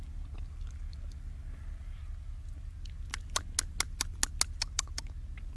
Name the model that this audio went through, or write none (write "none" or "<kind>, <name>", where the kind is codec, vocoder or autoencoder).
none